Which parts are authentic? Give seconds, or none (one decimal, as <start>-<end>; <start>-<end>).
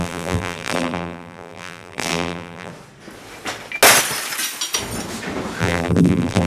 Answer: 2.7-5.6